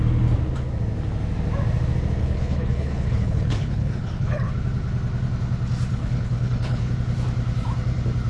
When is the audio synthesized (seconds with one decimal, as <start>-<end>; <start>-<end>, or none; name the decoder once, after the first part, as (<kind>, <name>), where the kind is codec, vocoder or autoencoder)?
2.2-4.5 (codec, HILCodec); 5.9-6.9